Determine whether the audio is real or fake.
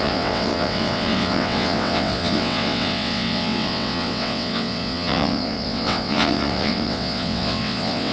fake